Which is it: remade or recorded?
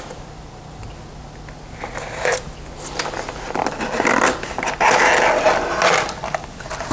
recorded